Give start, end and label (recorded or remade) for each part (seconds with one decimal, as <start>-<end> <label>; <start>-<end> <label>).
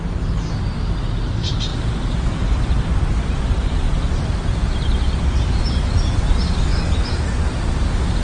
0.0-8.2 recorded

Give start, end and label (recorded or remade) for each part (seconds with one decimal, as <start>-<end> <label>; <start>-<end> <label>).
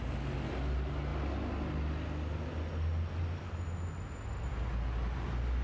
0.0-5.6 recorded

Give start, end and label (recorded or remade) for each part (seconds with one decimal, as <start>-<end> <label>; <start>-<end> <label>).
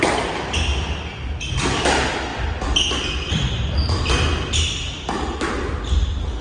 0.0-6.4 recorded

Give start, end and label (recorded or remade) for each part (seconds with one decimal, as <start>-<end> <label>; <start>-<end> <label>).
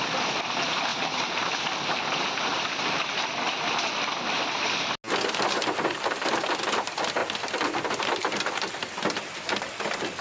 0.0-0.9 remade; 0.9-6.1 recorded; 6.1-7.2 remade; 7.2-8.0 recorded; 8.0-10.2 remade